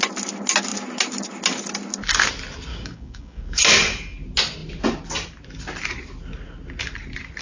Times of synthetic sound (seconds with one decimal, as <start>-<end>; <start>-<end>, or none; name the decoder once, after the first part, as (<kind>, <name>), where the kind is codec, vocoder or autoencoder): 2.7-3.6 (codec, DAC)